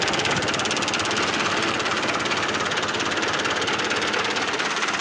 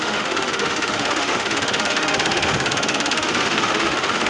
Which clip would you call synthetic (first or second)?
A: second